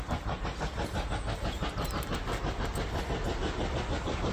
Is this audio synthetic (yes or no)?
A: no